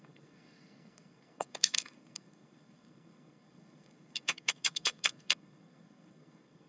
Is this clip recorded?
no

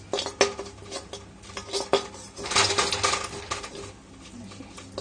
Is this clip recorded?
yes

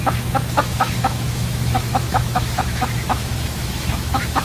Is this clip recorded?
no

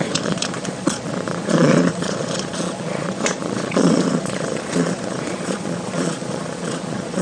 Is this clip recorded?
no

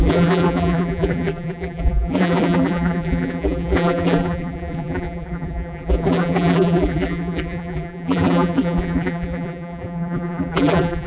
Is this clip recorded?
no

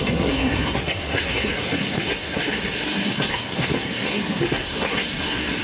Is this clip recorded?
no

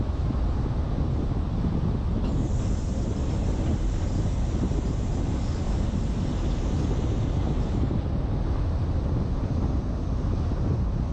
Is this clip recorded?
yes